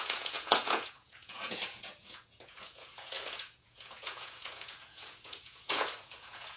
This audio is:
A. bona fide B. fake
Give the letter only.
B